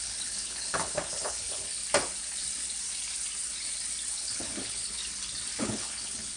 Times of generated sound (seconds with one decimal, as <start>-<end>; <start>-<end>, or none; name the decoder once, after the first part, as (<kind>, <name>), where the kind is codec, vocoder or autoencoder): 0.0-1.8 (codec, HILCodec); 4.1-5.0; 5.6-6.4